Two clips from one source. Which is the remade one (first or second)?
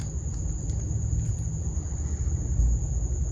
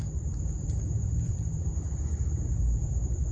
second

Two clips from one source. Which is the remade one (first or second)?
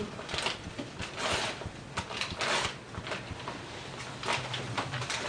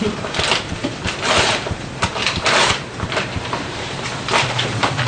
second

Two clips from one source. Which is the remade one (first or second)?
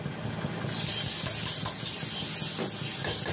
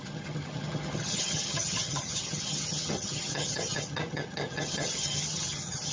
second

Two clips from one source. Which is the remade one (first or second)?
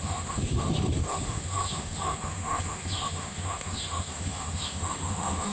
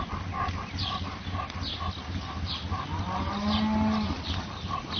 first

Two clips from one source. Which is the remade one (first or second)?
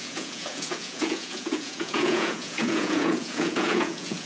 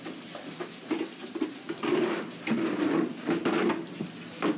first